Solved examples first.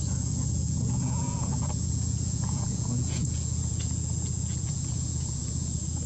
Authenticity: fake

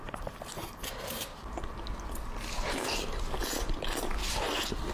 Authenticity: real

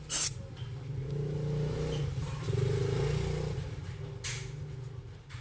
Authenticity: real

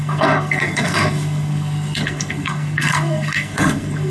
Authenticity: fake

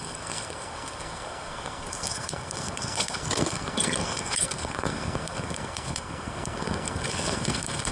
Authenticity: fake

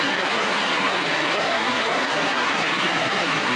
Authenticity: fake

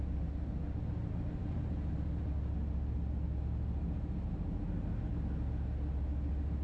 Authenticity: real